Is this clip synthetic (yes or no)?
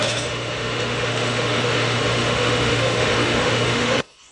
yes